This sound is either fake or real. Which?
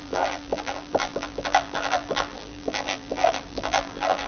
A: fake